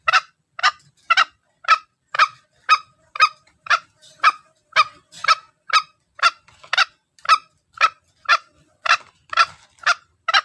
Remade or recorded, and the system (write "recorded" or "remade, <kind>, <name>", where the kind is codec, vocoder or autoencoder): recorded